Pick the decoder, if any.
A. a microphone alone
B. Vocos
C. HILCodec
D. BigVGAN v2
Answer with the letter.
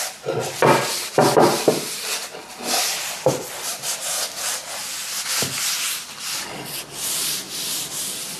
A